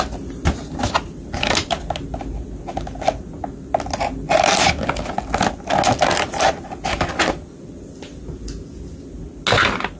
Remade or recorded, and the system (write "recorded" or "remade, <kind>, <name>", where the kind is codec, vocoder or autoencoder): recorded